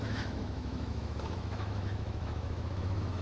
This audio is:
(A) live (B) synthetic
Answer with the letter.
B